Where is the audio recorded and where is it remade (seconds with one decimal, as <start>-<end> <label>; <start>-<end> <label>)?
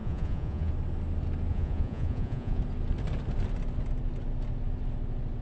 0.0-0.7 remade; 0.7-1.5 recorded; 1.5-2.6 remade; 2.6-5.4 recorded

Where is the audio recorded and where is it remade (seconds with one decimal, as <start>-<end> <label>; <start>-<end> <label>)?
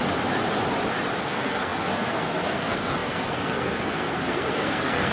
0.0-1.2 recorded; 1.2-5.1 remade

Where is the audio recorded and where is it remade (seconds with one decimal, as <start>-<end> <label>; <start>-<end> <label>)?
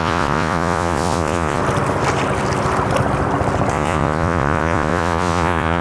0.0-1.6 remade; 1.6-3.7 recorded; 3.7-5.8 remade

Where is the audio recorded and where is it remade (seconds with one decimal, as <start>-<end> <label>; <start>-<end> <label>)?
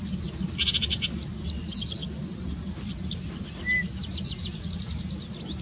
0.0-5.6 recorded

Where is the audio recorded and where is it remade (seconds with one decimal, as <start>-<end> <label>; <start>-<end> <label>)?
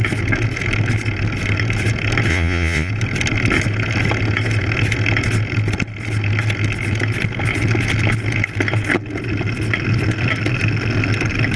0.0-2.3 recorded; 2.3-2.9 remade; 2.9-11.6 recorded